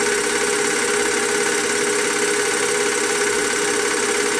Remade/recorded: recorded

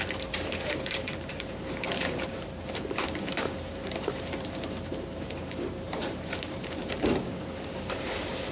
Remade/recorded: remade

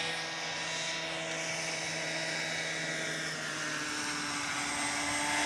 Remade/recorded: recorded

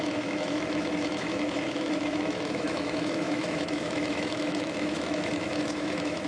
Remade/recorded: remade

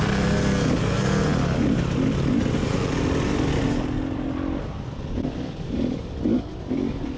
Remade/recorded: recorded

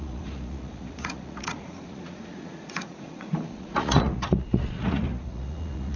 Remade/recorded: remade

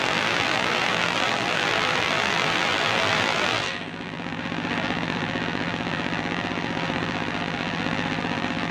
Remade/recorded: remade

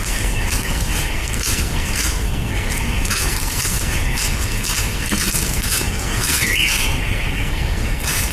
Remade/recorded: remade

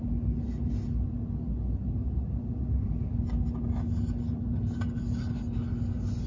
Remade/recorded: recorded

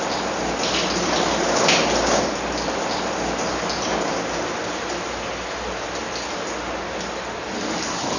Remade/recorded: recorded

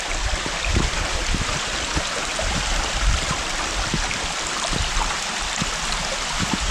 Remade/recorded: remade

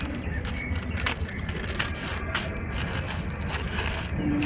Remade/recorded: recorded